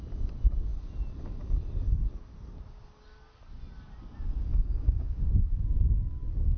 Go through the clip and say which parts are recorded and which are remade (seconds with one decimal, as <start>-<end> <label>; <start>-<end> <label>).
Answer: 0.0-4.5 recorded; 4.5-5.2 remade; 5.2-6.6 recorded